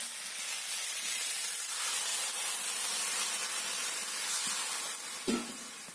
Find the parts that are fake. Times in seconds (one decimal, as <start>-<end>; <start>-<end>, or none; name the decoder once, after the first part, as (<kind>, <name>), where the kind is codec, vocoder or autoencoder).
none